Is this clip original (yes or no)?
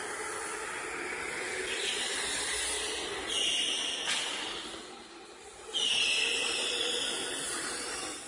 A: yes